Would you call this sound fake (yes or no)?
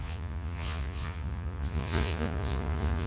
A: yes